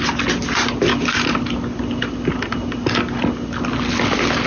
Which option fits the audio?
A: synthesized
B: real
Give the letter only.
B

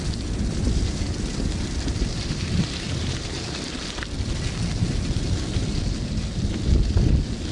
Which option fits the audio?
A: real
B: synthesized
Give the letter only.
A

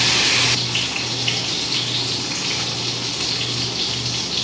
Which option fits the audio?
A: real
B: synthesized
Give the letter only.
A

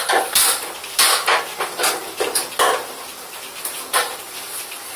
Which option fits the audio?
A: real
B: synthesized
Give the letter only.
A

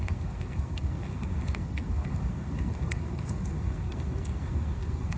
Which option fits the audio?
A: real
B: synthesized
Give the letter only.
B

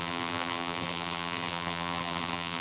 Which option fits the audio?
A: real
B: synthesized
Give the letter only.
B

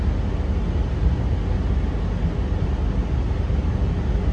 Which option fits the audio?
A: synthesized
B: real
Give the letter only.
B